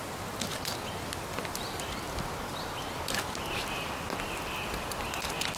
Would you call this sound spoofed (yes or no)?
no